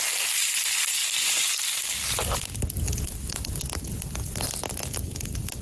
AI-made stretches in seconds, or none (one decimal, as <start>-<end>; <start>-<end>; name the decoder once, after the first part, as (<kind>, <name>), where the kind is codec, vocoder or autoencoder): none